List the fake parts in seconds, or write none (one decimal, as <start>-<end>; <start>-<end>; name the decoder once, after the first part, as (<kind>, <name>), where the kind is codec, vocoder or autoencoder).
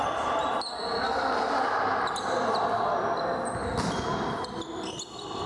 none